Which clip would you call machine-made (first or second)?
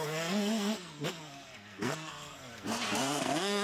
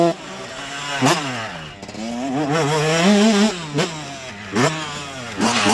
first